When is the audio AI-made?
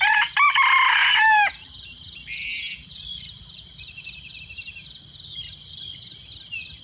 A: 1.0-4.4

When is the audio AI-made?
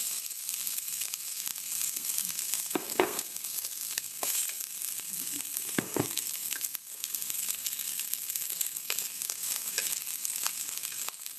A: 0.0-11.4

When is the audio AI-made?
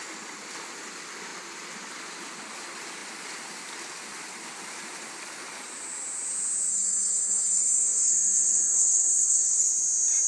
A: 6.7-9.7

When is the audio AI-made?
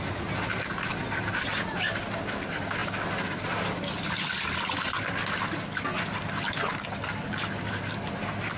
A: none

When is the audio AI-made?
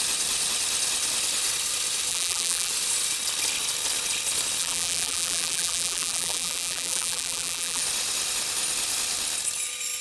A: 2.1-2.7; 4.6-7.8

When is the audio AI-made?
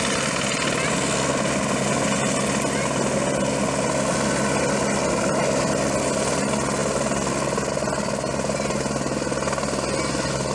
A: none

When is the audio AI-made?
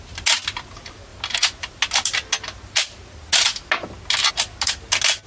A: none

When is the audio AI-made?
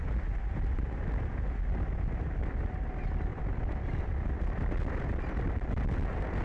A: 3.3-4.0